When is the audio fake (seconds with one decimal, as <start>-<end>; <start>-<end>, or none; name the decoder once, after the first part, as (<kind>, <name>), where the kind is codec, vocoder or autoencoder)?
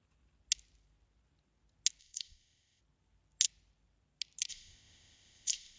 2.0-2.8 (codec, ZipCodec); 4.5-5.8